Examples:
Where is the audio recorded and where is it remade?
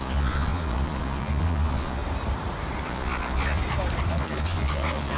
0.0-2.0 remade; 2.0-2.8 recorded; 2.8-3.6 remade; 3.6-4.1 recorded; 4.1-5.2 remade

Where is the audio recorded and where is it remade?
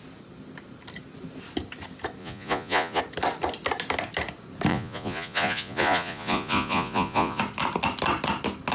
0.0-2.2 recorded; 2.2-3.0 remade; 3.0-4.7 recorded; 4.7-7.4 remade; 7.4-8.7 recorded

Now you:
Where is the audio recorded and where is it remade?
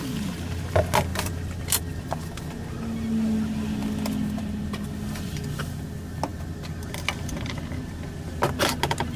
0.0-1.1 recorded; 1.1-2.0 remade; 2.0-9.2 recorded